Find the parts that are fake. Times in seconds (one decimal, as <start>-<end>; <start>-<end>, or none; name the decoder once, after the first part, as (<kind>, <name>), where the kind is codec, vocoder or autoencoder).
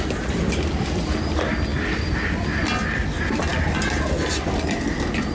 none